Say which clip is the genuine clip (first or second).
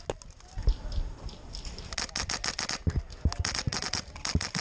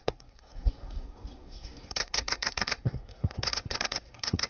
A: first